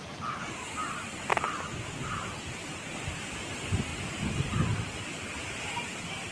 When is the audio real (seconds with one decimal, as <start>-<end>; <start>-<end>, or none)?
0.0-6.3